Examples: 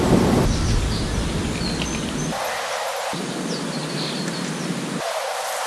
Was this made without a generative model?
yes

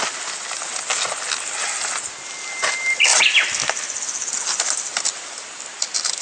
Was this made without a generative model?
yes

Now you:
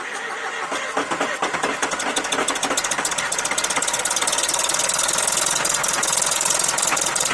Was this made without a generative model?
yes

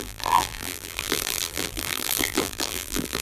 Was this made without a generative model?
no